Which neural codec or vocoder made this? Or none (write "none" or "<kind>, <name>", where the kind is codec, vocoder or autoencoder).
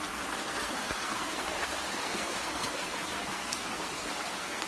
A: codec, SNAC